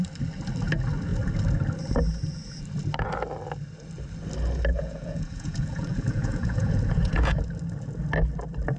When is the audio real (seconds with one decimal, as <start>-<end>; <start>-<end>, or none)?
0.0-4.7; 7.4-8.8